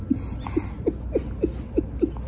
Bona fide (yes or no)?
yes